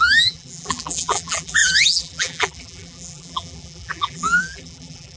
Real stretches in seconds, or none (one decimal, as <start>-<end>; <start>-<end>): none

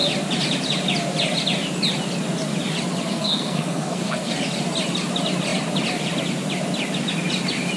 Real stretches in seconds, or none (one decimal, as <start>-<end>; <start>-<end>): 0.0-3.1; 4.3-7.8

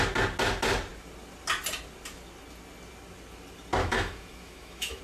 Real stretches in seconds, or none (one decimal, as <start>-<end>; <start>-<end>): 0.0-3.8

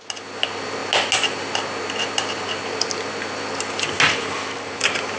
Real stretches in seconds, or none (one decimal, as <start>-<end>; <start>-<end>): 0.0-5.2

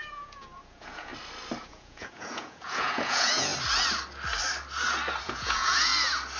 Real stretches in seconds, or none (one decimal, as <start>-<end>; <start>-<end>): 1.1-1.7; 3.5-5.2; 5.9-6.4

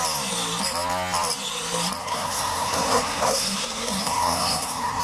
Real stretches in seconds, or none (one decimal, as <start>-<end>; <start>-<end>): 0.0-2.0

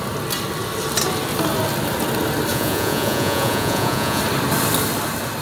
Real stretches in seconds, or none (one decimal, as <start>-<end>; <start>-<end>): 0.0-2.5; 4.2-5.4

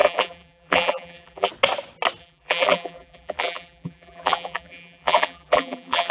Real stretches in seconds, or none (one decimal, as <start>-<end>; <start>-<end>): 1.5-2.2